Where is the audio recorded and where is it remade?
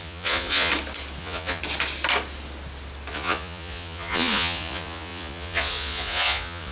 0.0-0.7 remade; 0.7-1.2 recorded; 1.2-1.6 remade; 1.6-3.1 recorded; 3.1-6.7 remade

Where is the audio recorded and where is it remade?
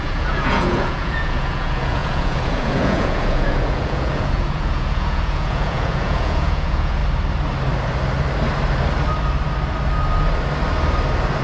0.0-7.0 remade; 7.0-11.4 recorded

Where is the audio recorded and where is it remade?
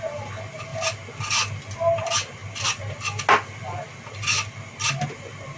0.0-5.6 recorded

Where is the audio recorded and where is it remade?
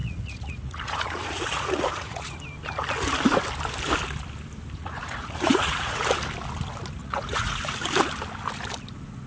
0.0-2.4 remade; 2.4-4.8 recorded; 4.8-6.0 remade; 6.0-7.0 recorded; 7.0-7.6 remade; 7.6-9.3 recorded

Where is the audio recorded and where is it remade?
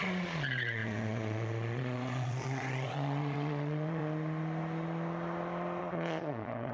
0.0-4.0 remade; 4.0-5.8 recorded; 5.8-6.7 remade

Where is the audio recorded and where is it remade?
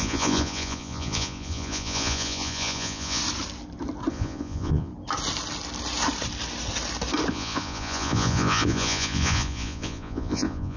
0.0-3.2 remade; 3.2-4.1 recorded; 4.1-4.9 remade; 4.9-7.3 recorded; 7.3-10.8 remade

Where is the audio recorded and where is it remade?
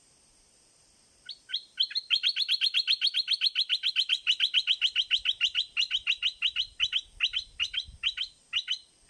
0.0-9.1 recorded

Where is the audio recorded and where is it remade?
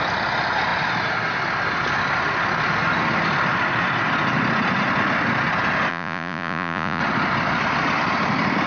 0.0-5.9 recorded; 5.9-7.0 remade; 7.0-8.7 recorded